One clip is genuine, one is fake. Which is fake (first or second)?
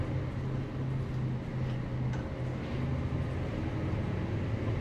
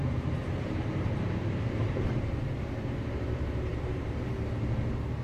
second